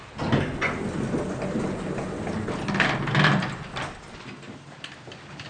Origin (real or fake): real